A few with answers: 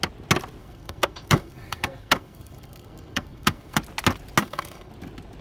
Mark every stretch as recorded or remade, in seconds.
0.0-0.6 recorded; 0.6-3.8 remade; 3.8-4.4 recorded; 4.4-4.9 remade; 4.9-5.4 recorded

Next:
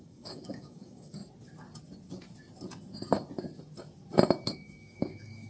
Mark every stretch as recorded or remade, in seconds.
0.0-1.2 remade; 1.2-4.5 recorded; 4.5-5.5 remade